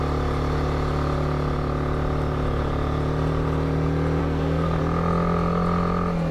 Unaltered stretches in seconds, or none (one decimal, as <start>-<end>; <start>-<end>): 0.0-4.2; 4.8-6.3